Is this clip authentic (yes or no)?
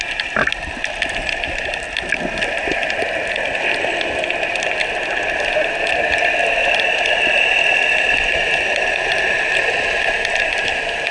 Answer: yes